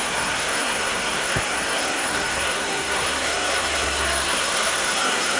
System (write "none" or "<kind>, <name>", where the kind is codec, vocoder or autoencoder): codec, SNAC